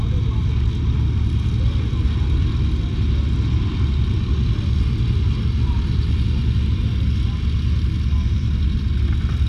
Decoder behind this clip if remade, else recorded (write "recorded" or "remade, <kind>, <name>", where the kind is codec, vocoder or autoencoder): recorded